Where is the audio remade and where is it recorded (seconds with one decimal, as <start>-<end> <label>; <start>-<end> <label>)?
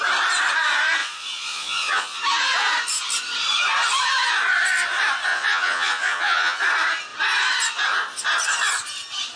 0.0-1.0 recorded; 1.0-2.2 remade; 2.2-5.3 recorded; 5.3-6.6 remade; 6.6-9.4 recorded